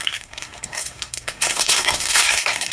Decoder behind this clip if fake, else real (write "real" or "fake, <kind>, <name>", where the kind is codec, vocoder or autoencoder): fake, codec, SNAC